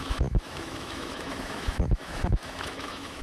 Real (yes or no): no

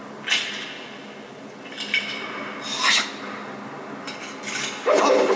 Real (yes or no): yes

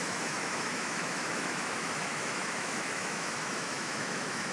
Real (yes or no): no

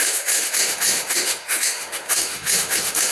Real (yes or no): no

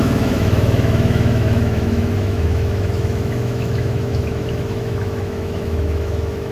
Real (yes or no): no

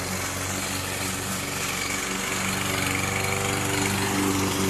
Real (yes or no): yes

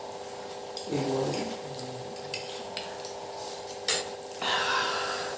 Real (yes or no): yes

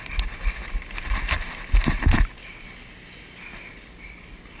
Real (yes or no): yes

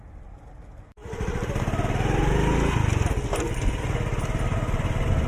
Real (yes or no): yes